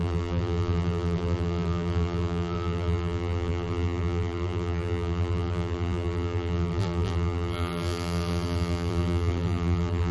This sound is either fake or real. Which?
fake